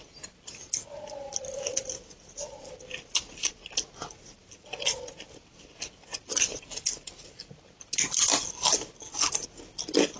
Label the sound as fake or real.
real